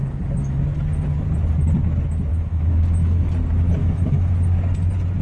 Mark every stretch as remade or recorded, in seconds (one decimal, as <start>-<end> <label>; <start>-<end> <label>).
0.0-0.6 remade; 0.6-2.3 recorded; 2.3-3.3 remade; 3.3-3.8 recorded; 3.8-4.3 remade; 4.3-5.2 recorded